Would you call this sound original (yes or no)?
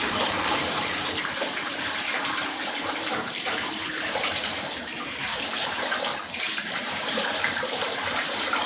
no